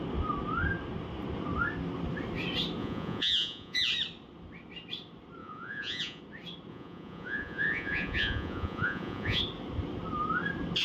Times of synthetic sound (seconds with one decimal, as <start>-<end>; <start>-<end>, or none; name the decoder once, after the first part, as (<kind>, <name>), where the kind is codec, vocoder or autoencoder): 2.8-3.9 (vocoder, Vocos); 5.4-6.2; 6.7-9.4